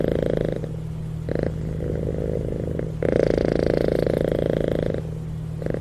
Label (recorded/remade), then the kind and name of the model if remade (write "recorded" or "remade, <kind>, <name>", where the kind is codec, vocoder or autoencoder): recorded